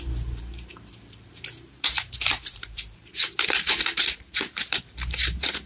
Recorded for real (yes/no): no